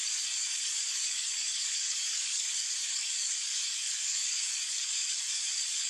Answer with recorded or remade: remade